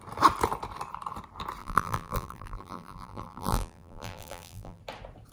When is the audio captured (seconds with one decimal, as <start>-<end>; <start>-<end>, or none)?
0.0-1.6; 4.8-5.3